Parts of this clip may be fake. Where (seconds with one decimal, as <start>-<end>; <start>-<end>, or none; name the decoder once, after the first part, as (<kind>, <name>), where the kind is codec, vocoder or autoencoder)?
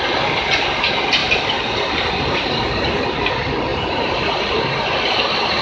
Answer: 3.7-4.3 (vocoder, BigVGAN v2)